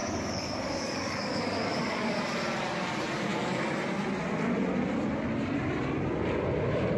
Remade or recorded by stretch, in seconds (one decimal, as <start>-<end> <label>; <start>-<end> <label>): 0.0-2.2 remade; 2.2-7.0 recorded

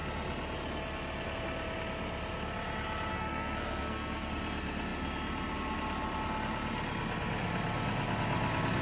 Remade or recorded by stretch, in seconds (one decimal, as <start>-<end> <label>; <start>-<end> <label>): 0.0-3.1 recorded; 3.1-4.3 remade; 4.3-8.8 recorded